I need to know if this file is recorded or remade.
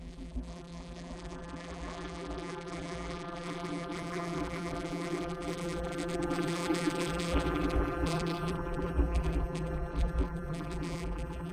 remade